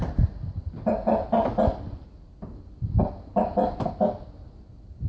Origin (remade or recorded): recorded